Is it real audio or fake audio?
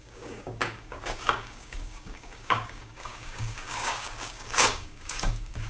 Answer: fake